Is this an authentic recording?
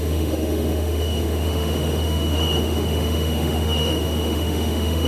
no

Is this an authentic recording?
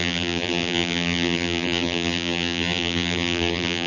no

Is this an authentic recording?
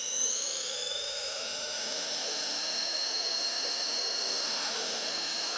no